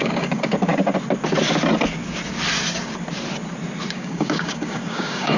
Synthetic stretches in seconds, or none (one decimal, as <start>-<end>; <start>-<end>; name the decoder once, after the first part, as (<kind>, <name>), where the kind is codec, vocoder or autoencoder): 0.0-0.7 (codec, DAC); 3.9-5.4